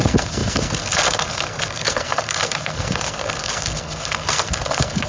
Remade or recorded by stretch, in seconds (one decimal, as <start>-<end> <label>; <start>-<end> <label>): 0.0-5.1 remade

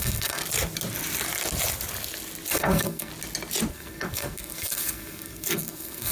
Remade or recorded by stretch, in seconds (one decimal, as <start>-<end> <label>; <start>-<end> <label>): 0.0-0.4 remade; 0.4-2.5 recorded; 2.5-3.1 remade; 3.1-3.7 recorded; 3.7-6.1 remade

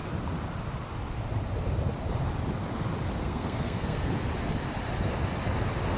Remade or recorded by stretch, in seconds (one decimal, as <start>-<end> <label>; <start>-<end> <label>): 0.0-3.2 recorded; 3.2-4.1 remade; 4.1-6.0 recorded

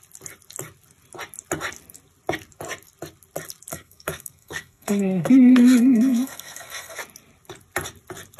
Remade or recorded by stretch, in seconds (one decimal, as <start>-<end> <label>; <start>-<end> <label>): 0.0-3.7 recorded; 3.7-7.0 remade; 7.0-8.4 recorded

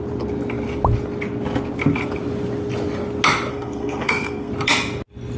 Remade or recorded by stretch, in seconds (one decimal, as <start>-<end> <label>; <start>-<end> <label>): 0.0-3.5 recorded; 3.5-4.5 remade; 4.5-5.4 recorded

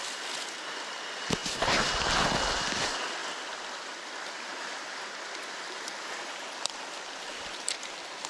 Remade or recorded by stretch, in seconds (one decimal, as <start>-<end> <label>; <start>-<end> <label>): 0.0-8.3 recorded